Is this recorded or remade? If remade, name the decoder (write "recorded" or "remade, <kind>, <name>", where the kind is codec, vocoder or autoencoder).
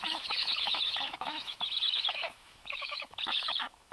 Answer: remade, autoencoder, DAC-VAE